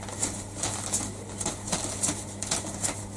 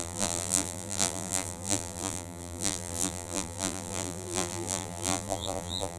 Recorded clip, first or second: first